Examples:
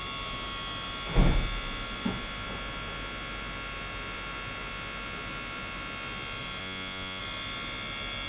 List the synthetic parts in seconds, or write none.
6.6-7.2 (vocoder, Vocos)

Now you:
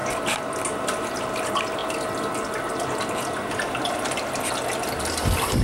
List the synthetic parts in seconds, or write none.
0.0-5.6 (vocoder, BigVGAN v2)